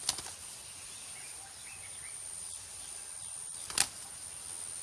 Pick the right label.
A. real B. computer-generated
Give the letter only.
A